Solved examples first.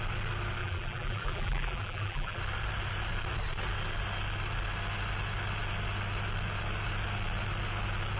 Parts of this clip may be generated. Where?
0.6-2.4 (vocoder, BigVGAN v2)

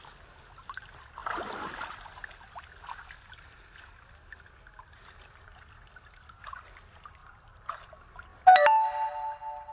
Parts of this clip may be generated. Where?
7.2-7.7 (vocoder, BigVGAN v2)

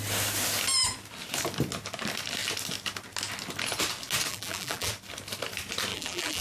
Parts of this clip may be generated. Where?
4.3-4.9 (vocoder, BigVGAN v2); 5.9-6.4

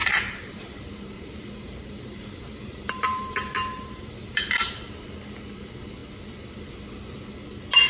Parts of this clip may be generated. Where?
0.0-4.7 (vocoder, BigVGAN v2)

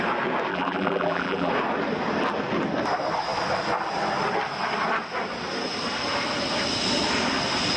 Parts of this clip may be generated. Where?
0.5-1.5 (vocoder, BigVGAN v2)

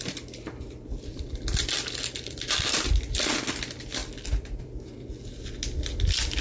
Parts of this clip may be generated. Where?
1.1-2.8 (vocoder, BigVGAN v2)

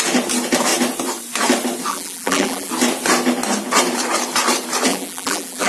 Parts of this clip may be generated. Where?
1.9-2.7 (vocoder, BigVGAN v2); 4.9-5.7